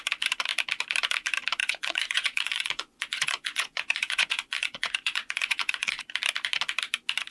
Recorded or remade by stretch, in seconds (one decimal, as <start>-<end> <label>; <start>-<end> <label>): 0.0-1.6 recorded; 1.6-6.0 remade; 6.0-7.3 recorded